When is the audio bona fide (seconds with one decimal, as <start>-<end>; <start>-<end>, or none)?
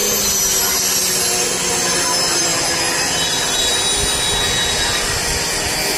0.0-6.0